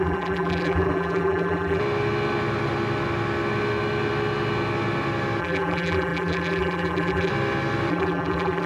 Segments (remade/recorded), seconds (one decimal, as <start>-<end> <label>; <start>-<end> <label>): 0.0-1.8 remade; 1.8-5.4 recorded; 5.4-7.3 remade; 7.3-7.9 recorded; 7.9-8.7 remade

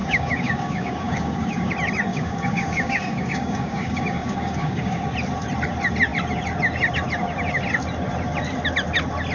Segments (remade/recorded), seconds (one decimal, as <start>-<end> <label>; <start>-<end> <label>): 0.0-1.7 remade; 1.7-2.1 recorded; 2.1-5.0 remade; 5.0-9.3 recorded